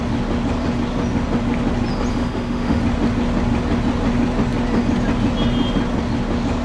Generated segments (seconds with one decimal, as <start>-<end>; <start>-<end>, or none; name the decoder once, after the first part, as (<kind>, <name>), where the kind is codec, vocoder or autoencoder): 2.1-2.8 (autoencoder, DAC-VAE)